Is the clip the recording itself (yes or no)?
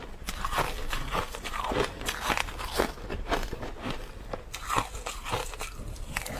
yes